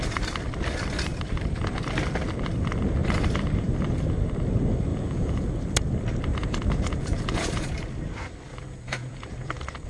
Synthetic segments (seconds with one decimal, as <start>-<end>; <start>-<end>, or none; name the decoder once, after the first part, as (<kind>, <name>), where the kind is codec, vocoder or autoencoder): 4.9-5.5 (vocoder, Vocos); 6.3-7.7; 8.5-9.9